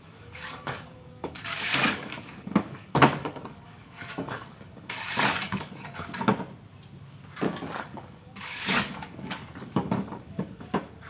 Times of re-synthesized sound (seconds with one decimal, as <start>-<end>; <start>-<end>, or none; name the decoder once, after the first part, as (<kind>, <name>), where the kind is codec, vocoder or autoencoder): 0.0-6.3 (codec, DAC); 7.8-11.1